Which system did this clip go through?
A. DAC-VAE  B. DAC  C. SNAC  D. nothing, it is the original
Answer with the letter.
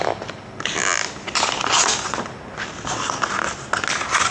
D